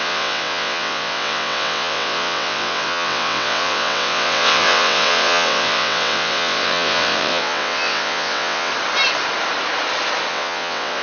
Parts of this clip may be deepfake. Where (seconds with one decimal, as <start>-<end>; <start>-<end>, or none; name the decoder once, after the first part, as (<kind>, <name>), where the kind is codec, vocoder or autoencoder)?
0.0-8.7 (vocoder, WaveNeXt); 10.3-11.0